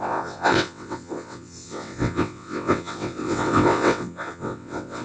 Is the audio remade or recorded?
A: remade